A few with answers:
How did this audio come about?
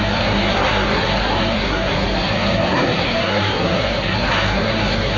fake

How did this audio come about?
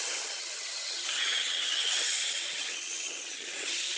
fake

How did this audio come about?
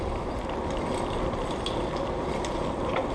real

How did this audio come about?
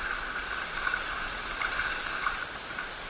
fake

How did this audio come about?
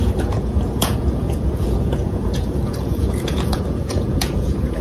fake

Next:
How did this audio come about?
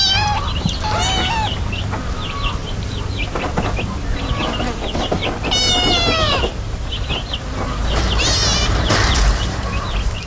real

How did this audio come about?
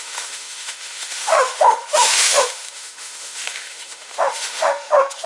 fake